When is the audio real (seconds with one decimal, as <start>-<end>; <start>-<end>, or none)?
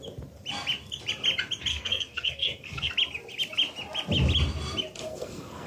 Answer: 0.0-1.7; 2.9-5.0